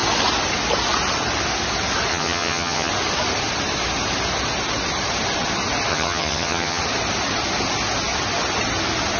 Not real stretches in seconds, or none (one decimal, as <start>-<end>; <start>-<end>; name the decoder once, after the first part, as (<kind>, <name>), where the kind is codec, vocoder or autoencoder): 2.1-2.9 (vocoder, HiFi-GAN); 5.9-6.8